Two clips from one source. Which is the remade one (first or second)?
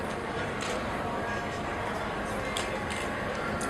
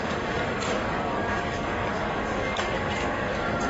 second